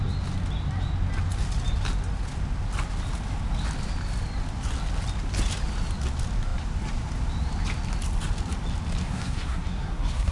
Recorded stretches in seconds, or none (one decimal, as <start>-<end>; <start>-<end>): 0.0-9.0

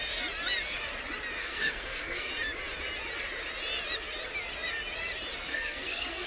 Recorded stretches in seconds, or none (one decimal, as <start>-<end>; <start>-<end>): 0.0-1.4; 2.3-5.5

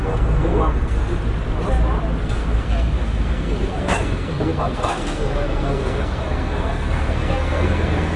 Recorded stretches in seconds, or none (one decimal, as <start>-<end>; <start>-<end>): 1.0-2.2

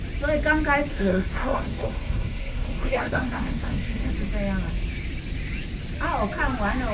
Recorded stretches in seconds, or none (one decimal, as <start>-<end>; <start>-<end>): 0.0-0.9; 4.1-6.9

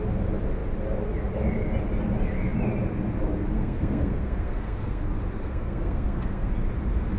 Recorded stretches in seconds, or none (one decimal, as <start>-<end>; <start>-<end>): 0.0-3.5; 5.0-5.4; 6.5-7.2